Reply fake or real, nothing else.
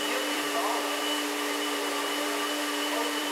fake